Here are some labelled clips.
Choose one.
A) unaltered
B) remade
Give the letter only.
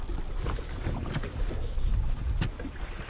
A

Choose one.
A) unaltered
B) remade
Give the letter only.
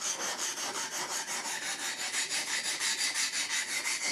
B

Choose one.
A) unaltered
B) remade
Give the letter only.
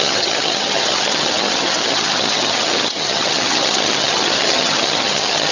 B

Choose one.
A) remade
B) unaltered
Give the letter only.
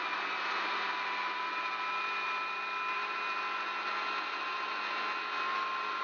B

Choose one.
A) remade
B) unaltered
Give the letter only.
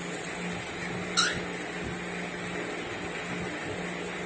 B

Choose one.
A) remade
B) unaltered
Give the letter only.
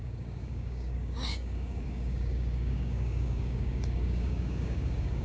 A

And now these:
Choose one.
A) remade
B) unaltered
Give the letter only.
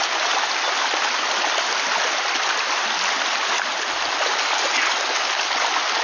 B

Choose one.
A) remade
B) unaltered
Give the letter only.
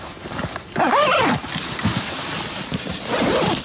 A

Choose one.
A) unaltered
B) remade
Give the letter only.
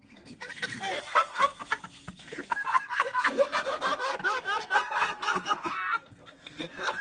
B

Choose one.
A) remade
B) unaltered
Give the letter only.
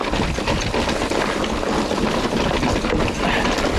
B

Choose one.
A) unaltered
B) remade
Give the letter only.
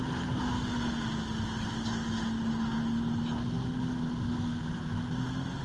A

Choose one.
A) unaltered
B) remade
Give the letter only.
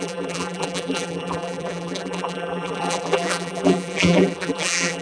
B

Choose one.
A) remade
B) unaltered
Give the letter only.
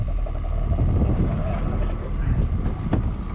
B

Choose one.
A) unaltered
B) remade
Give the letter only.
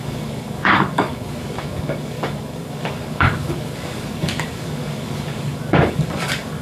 B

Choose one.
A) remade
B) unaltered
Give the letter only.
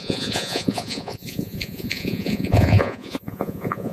A